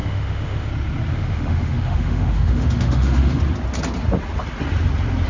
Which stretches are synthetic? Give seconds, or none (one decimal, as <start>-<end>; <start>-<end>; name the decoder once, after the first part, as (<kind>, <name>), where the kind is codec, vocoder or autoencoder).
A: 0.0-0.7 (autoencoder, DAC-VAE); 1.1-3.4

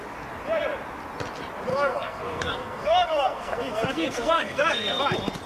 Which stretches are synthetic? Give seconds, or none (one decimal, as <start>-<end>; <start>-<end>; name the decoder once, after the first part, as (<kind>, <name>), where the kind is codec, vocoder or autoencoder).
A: 1.7-5.0 (codec, SNAC)

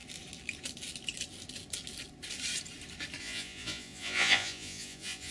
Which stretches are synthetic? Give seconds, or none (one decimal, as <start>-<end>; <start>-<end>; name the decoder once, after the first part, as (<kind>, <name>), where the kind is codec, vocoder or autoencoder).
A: 3.2-5.3 (vocoder, Vocos)

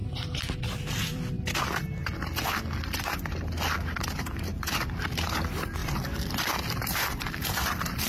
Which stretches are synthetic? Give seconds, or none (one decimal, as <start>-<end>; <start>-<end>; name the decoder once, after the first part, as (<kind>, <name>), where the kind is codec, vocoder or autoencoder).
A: 0.0-1.4 (vocoder, BigVGAN v2); 5.8-6.5